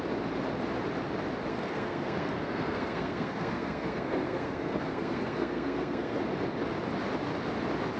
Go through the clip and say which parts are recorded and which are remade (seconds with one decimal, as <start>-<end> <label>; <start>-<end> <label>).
0.0-1.5 recorded; 1.5-6.2 remade; 6.2-8.0 recorded